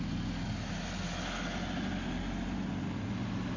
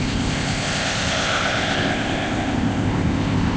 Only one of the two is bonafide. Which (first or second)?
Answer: first